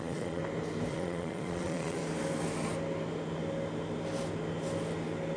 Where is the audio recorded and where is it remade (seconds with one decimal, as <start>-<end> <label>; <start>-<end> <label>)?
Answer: 0.0-0.4 remade; 0.4-0.9 recorded; 0.9-2.0 remade; 2.0-5.4 recorded